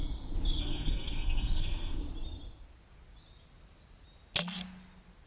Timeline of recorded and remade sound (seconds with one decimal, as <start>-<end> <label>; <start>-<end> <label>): 0.0-0.6 recorded; 0.6-2.0 remade; 2.0-5.3 recorded